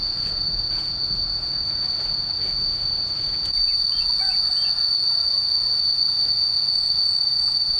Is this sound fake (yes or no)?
yes